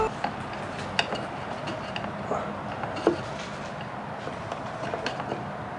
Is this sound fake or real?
real